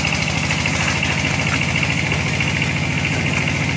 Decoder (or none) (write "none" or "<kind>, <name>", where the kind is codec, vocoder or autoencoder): none